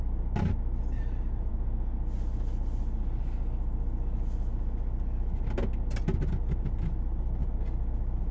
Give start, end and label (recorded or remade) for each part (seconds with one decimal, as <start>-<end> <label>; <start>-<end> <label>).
0.0-8.3 recorded